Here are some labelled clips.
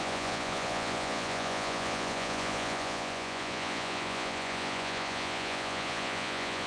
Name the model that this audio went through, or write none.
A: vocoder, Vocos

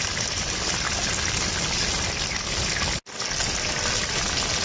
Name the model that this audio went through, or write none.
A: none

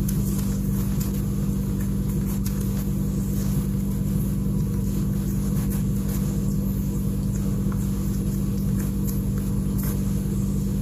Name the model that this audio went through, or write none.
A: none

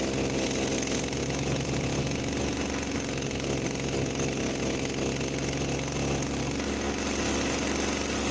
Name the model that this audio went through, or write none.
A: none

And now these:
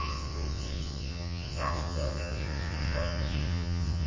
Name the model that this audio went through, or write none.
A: vocoder, WaveNeXt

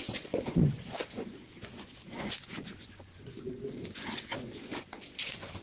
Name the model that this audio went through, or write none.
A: vocoder, Vocos